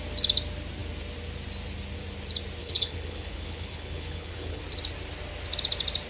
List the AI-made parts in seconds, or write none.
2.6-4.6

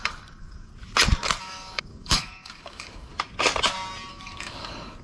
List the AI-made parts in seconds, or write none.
0.0-0.7; 1.4-3.1; 4.1-5.0

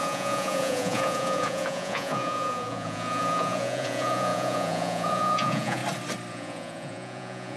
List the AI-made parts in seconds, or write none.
0.0-5.8; 6.3-7.6